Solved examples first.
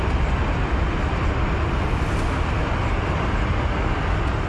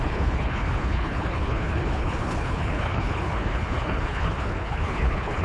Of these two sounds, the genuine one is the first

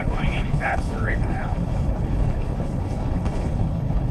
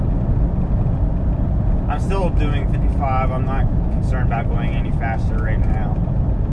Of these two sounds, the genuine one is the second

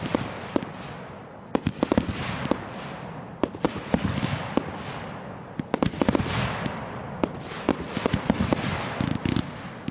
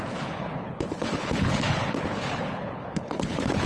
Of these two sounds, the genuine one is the first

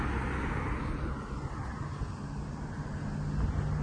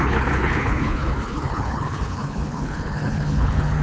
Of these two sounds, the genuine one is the first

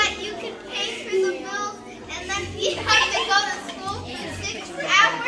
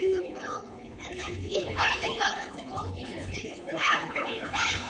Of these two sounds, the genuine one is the first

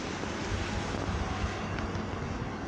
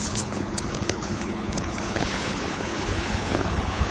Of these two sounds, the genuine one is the first